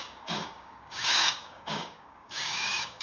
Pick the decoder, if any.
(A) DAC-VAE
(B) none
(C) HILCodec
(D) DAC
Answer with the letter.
D